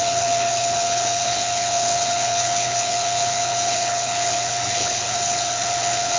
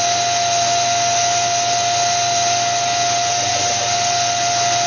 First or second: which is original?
second